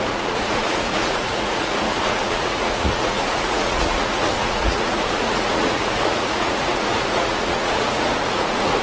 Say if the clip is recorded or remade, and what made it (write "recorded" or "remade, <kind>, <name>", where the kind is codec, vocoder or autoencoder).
remade, vocoder, Vocos